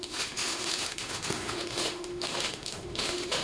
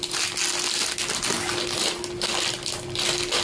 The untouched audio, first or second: second